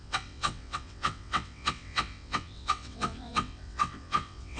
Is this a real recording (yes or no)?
no